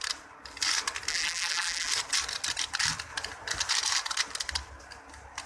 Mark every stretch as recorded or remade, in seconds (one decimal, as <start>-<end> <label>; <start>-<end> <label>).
0.0-1.1 recorded; 1.1-1.9 remade; 1.9-5.5 recorded